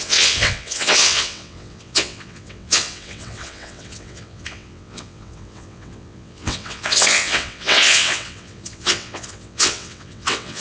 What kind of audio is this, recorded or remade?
remade